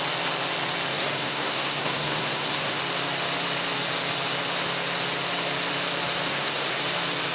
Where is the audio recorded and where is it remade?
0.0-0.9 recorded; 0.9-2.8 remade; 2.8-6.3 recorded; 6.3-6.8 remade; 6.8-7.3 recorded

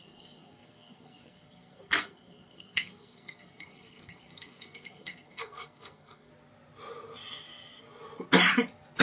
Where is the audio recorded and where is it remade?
0.0-6.3 remade; 6.3-9.0 recorded

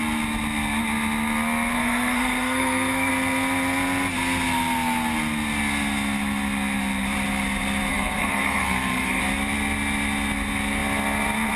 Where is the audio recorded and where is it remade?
0.0-1.8 recorded; 1.8-3.1 remade; 3.1-7.9 recorded; 7.9-9.2 remade; 9.2-11.6 recorded

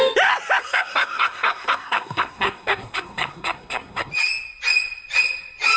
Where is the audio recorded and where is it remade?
0.0-0.6 recorded; 0.6-4.1 remade; 4.1-5.8 recorded

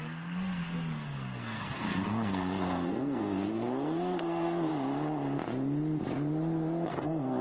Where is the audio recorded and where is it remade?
0.0-4.7 remade; 4.7-6.9 recorded; 6.9-7.4 remade

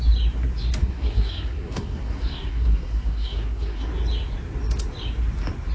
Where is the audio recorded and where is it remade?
0.0-0.8 recorded; 0.8-3.9 remade; 3.9-5.7 recorded

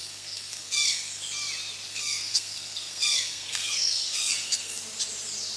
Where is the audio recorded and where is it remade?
0.0-1.2 remade; 1.2-1.9 recorded; 1.9-4.8 remade; 4.8-5.6 recorded

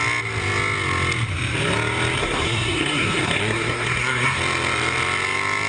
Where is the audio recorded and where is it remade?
0.0-2.2 recorded; 2.2-4.4 remade; 4.4-5.7 recorded